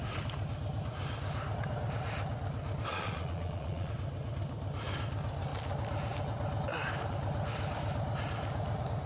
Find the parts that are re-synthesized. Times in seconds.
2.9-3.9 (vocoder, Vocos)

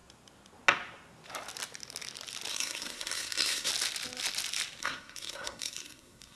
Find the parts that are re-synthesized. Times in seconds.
2.5-3.7 (codec, SNAC); 4.8-6.4

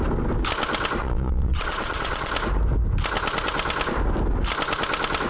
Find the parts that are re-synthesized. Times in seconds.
1.0-2.3 (vocoder, Vocos)

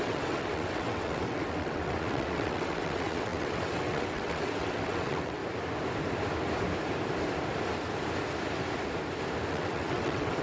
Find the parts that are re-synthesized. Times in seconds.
0.0-5.4 (vocoder, WaveNeXt); 9.5-10.4

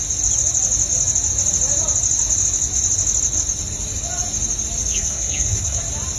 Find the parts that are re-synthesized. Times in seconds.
4.9-5.8 (codec, SNAC)